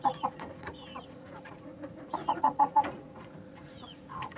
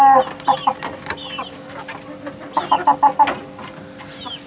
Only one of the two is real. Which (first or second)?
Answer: second